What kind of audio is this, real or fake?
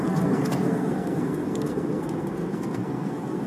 fake